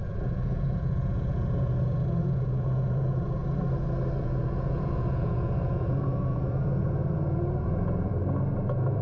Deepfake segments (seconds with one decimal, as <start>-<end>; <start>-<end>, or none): 0.0-3.4; 4.2-8.1